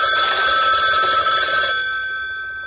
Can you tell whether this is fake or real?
real